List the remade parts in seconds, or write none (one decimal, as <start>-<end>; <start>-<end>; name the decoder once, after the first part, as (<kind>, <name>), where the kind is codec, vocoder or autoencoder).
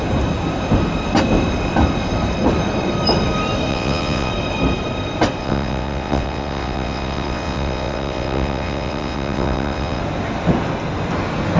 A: 3.7-4.3 (vocoder, WaveNeXt); 5.4-10.0